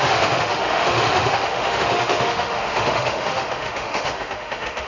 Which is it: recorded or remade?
remade